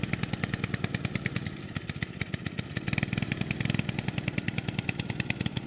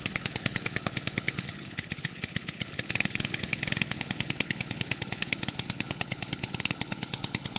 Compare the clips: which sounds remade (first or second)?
second